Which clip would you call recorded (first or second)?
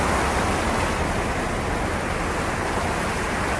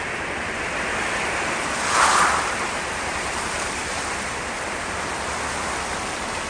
first